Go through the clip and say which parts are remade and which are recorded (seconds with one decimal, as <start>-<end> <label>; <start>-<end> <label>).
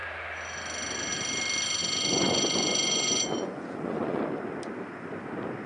0.0-1.8 recorded; 1.8-4.2 remade; 4.2-5.7 recorded